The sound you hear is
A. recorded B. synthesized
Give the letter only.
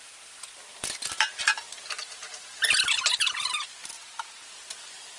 A